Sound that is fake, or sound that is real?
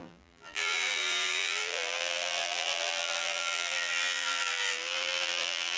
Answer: fake